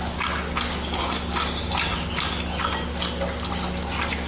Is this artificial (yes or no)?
no